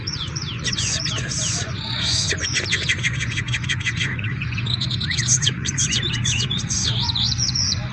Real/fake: fake